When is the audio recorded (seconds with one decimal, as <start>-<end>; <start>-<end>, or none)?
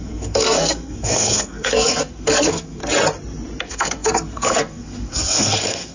2.8-3.6